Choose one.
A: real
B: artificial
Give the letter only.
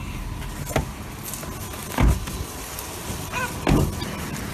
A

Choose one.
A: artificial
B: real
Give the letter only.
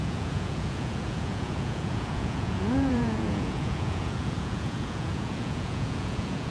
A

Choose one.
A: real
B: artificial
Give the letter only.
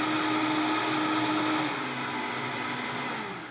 A